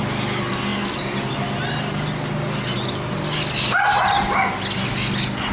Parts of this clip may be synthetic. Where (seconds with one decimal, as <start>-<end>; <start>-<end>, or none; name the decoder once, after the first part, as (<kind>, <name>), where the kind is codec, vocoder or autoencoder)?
none

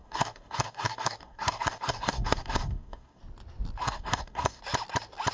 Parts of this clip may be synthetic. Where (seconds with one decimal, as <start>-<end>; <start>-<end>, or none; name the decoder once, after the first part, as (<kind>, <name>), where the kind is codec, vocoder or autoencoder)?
0.0-3.2 (codec, DAC); 3.8-4.6

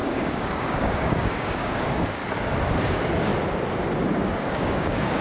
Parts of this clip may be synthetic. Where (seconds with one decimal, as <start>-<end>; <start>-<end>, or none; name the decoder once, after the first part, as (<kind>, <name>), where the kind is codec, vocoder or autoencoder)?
0.0-2.2 (codec, DAC); 2.9-3.3; 4.5-5.2

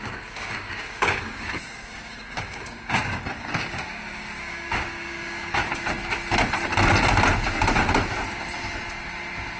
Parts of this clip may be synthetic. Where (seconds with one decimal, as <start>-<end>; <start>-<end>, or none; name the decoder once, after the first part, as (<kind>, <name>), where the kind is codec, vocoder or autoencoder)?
0.0-5.6 (codec, DAC)

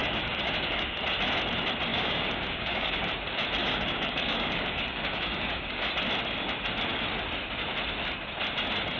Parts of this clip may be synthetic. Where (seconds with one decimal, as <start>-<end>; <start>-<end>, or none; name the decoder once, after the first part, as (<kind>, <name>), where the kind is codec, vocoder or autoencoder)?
0.0-1.0 (codec, DAC); 1.9-3.1; 3.6-5.9

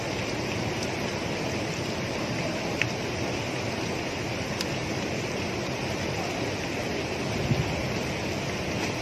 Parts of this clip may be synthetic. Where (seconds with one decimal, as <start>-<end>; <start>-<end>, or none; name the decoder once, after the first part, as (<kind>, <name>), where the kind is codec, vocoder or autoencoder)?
none

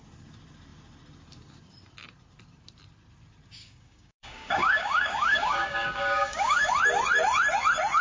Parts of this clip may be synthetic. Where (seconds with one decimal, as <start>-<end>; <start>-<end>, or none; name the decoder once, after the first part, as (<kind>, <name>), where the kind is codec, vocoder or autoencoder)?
3.6-6.7 (codec, DAC)

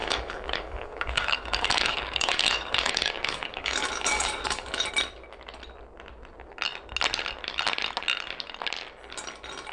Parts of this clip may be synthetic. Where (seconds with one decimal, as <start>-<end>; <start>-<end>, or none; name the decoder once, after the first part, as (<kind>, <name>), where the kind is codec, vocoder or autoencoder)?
0.0-4.9 (codec, DAC)